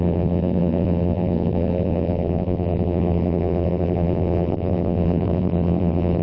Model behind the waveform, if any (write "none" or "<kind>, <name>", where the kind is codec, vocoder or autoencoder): vocoder, BigVGAN v2